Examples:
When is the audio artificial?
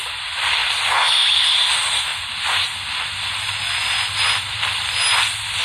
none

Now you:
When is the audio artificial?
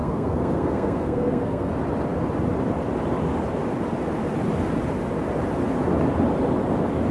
0.0-1.7 (codec, SNAC)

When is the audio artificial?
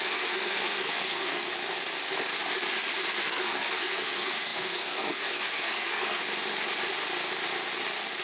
0.0-1.5 (codec, SNAC); 3.2-6.2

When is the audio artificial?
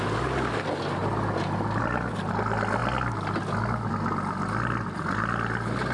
none